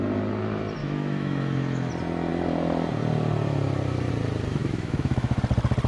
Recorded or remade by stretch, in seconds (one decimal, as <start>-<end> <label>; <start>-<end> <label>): 0.0-0.8 recorded; 0.8-1.9 remade; 1.9-4.6 recorded; 4.6-5.4 remade; 5.4-5.9 recorded